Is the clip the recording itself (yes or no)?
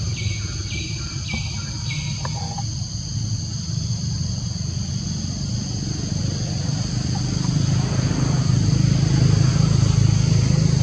yes